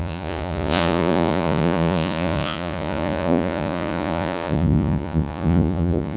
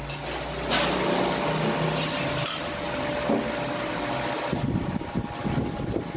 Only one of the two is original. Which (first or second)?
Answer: second